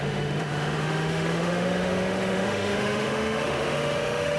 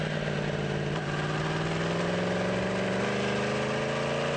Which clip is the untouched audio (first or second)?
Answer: second